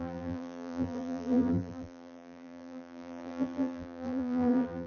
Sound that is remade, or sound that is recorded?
remade